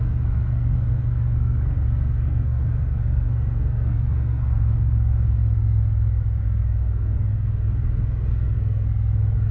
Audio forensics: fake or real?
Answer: fake